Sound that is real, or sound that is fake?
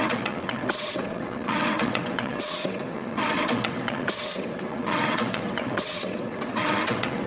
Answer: fake